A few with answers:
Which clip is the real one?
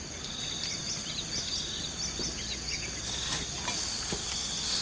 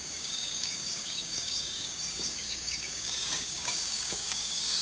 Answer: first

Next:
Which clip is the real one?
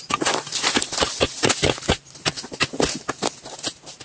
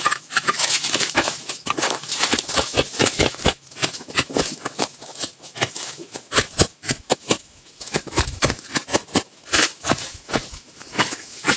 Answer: first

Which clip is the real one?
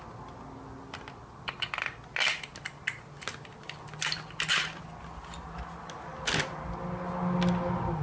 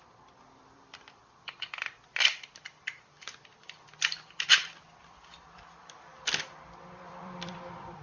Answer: first